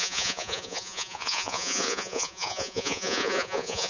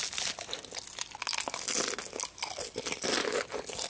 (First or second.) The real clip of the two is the second